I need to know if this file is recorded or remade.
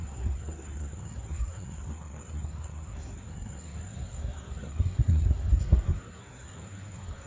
remade